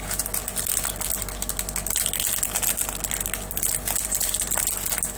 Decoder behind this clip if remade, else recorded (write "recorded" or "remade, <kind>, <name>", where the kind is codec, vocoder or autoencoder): recorded